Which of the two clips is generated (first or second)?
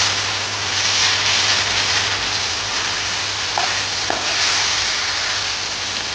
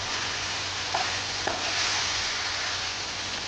second